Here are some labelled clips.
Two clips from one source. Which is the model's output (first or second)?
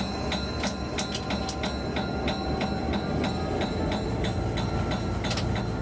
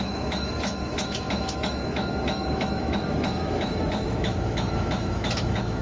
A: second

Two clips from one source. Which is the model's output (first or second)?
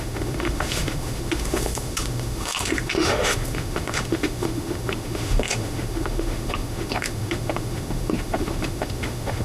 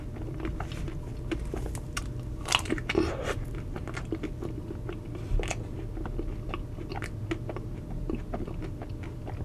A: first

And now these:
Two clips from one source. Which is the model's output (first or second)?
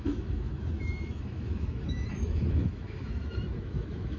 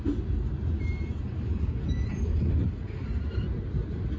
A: first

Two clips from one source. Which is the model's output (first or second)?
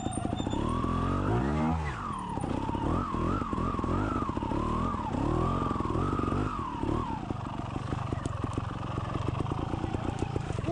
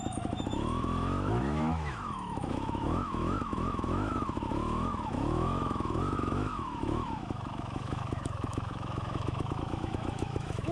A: second